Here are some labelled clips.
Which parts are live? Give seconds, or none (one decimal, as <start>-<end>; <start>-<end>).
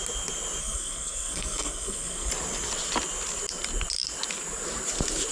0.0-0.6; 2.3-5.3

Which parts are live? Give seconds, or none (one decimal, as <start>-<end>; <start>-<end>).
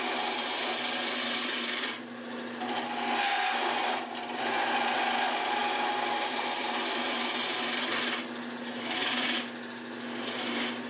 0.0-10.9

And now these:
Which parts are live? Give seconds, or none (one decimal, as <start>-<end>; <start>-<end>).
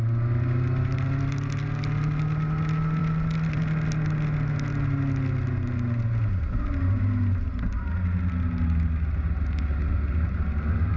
0.0-11.0